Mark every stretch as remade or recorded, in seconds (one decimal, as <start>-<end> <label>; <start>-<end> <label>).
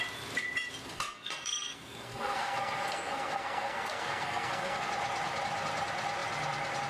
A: 0.0-0.8 recorded; 0.8-4.9 remade; 4.9-6.9 recorded